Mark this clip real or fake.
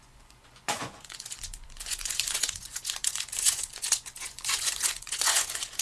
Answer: fake